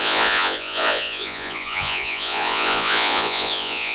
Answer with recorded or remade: remade